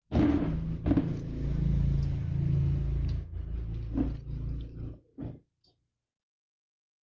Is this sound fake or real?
real